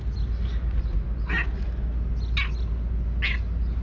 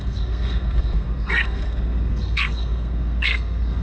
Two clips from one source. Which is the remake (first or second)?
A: second